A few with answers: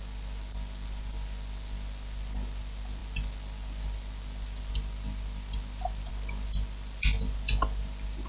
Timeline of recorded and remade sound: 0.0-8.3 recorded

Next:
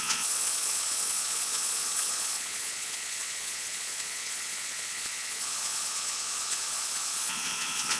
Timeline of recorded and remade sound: 0.0-8.0 remade

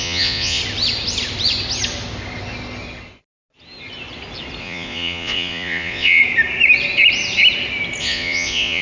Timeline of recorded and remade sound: 0.0-0.6 remade; 0.6-4.6 recorded; 4.6-6.2 remade; 6.2-8.0 recorded; 8.0-8.8 remade

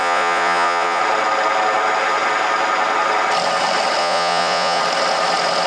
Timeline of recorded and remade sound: 0.0-1.0 remade; 1.0-4.0 recorded; 4.0-4.8 remade; 4.8-5.7 recorded

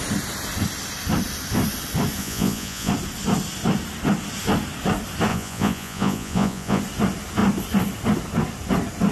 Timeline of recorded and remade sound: 0.0-2.2 recorded; 2.2-2.9 remade; 2.9-5.3 recorded; 5.3-6.8 remade; 6.8-9.1 recorded

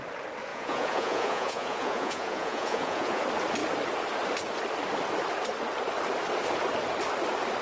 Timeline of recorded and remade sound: 0.0-0.5 recorded; 0.5-3.2 remade; 3.2-7.6 recorded

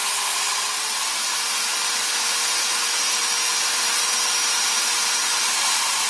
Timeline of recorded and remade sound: 0.0-6.1 recorded